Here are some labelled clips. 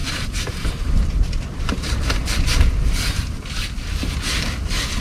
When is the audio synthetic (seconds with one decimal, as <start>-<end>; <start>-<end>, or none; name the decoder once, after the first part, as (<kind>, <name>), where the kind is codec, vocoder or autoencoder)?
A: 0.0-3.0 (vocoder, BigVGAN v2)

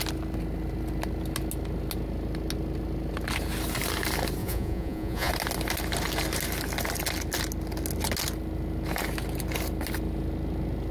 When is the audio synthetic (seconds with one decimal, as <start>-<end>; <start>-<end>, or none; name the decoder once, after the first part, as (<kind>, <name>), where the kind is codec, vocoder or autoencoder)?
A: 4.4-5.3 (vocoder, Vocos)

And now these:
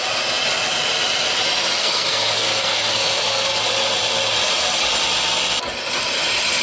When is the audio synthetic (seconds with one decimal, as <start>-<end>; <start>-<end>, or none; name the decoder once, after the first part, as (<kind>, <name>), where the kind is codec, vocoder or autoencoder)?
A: 1.8-3.6 (codec, SNAC)

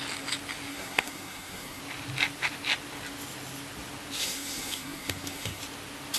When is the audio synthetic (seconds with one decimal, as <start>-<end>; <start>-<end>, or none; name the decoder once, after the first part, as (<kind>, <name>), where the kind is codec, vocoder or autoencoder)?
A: 0.7-1.8 (codec, SNAC); 4.2-5.6